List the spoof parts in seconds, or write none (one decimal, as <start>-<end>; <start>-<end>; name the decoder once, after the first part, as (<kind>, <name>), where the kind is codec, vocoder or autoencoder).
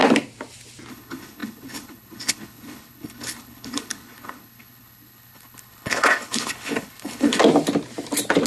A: 0.9-7.4 (codec, HILCodec)